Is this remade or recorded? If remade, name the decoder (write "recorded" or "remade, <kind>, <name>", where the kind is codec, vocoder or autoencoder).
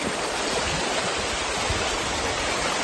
recorded